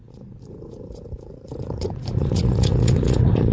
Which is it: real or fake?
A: fake